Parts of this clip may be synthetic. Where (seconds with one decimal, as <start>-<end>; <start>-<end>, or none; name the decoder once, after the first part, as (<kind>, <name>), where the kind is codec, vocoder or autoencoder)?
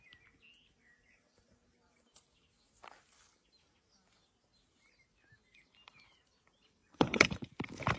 6.8-7.5 (vocoder, WaveNeXt)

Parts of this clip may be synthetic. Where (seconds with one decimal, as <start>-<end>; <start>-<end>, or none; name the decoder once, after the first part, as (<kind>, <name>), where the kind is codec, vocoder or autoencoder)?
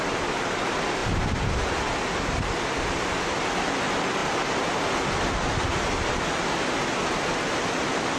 none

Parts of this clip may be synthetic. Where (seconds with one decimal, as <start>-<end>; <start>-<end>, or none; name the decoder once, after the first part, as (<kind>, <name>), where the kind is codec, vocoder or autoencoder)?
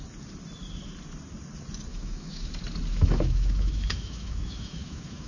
1.9-2.5 (autoencoder, DAC-VAE); 2.9-5.3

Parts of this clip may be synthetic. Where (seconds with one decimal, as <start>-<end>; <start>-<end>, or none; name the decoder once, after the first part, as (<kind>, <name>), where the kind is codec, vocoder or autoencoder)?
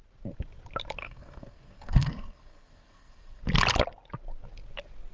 1.0-3.4 (codec, SNAC)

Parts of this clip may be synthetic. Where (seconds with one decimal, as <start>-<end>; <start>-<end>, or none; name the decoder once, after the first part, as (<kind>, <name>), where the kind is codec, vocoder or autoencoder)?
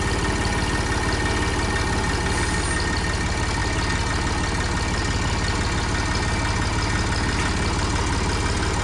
none